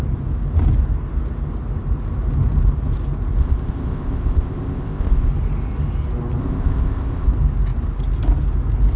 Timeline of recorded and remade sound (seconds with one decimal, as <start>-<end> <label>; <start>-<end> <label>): 0.0-3.4 recorded; 3.4-5.3 remade; 5.3-6.4 recorded; 6.4-7.3 remade; 7.3-9.0 recorded